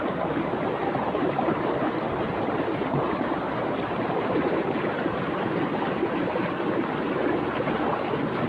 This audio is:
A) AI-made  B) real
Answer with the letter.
B